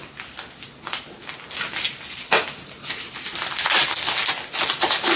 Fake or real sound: real